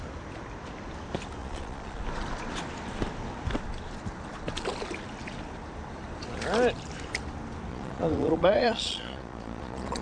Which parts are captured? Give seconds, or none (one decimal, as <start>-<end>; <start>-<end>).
0.0-1.4; 2.0-7.7